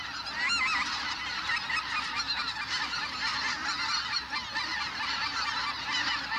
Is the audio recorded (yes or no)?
yes